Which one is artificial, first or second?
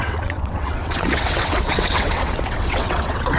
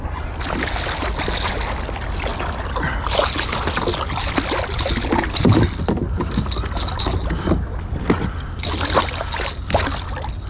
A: first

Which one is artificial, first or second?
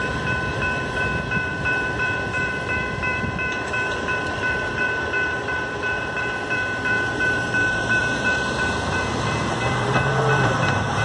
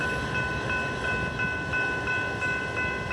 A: first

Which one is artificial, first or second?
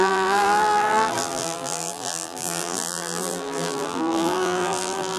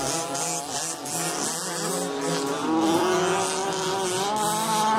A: first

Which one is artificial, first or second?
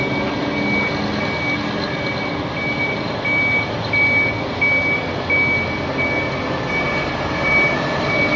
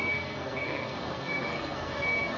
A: second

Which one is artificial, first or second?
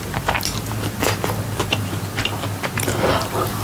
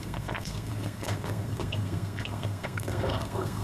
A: second